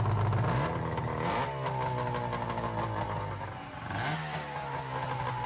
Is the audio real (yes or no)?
yes